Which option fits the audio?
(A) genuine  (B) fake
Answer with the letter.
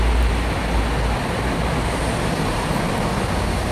A